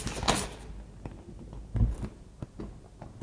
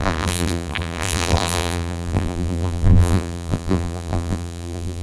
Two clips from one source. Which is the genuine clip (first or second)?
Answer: first